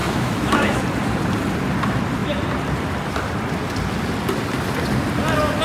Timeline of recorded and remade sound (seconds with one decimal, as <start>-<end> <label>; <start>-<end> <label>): 0.0-0.8 remade; 0.8-5.6 recorded